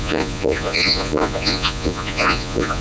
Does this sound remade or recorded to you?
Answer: remade